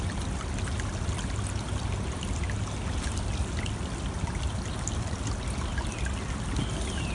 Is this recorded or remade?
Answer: recorded